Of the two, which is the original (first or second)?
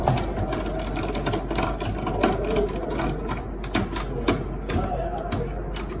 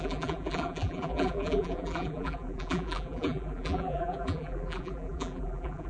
first